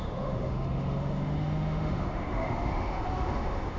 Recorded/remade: remade